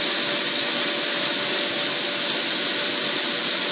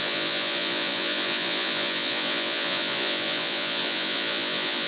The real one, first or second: first